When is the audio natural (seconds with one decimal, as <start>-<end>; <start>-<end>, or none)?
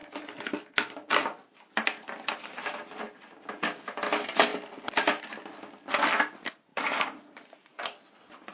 0.0-6.7; 7.8-8.5